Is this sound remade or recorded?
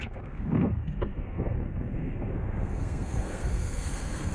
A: remade